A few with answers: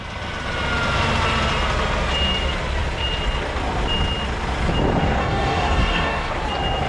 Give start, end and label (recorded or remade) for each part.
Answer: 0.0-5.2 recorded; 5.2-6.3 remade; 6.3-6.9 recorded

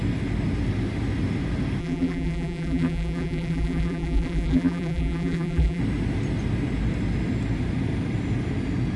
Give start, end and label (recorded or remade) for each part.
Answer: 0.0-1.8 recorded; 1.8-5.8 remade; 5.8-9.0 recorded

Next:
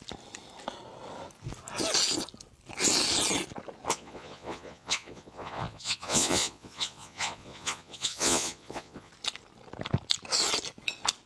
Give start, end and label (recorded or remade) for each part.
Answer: 0.0-3.9 recorded; 3.9-9.1 remade; 9.1-11.3 recorded

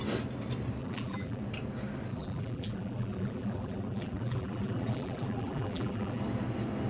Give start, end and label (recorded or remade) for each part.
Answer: 0.0-0.8 recorded; 0.8-1.4 remade; 1.4-2.1 recorded; 2.1-6.2 remade; 6.2-6.9 recorded

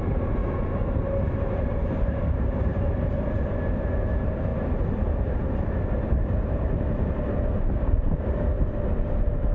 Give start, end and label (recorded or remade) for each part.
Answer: 0.0-9.5 remade